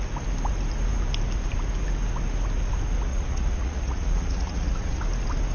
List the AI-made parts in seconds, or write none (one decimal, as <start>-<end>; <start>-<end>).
3.1-5.0